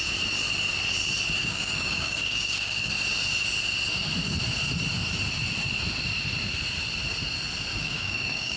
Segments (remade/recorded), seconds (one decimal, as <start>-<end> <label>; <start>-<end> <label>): 0.0-1.4 recorded; 1.4-2.9 remade; 2.9-7.7 recorded; 7.7-8.6 remade